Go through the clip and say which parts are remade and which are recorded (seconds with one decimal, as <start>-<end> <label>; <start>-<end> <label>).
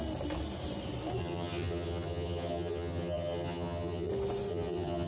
0.0-1.2 recorded; 1.2-4.1 remade; 4.1-4.5 recorded; 4.5-5.1 remade